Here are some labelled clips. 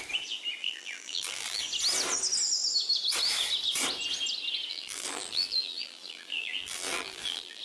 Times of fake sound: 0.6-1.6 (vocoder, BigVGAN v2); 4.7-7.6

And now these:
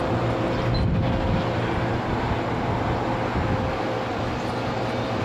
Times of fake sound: none

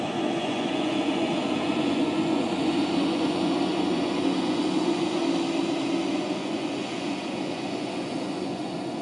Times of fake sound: 0.0-5.2 (vocoder, Vocos); 6.1-9.0